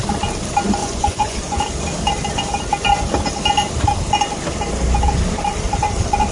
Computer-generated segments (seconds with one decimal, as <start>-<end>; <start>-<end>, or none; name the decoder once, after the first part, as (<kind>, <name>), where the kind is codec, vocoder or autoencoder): 0.8-1.6 (vocoder, Vocos)